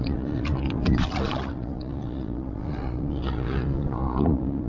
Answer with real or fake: fake